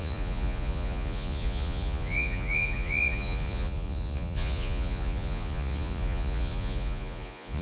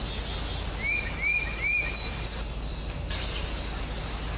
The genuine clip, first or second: second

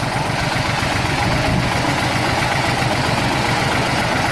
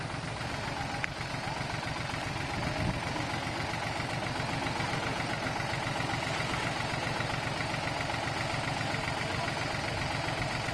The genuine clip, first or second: second